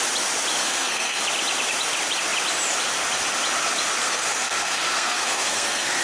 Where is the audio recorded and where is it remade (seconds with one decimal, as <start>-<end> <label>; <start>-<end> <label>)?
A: 0.0-0.6 recorded; 0.6-1.2 remade; 1.2-4.0 recorded; 4.0-6.0 remade